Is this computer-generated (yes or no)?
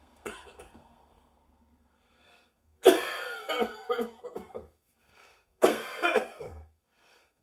yes